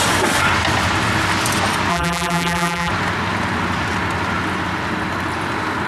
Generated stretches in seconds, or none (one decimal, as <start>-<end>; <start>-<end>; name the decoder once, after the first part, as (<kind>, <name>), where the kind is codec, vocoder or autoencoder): 1.9-2.9 (vocoder, BigVGAN v2)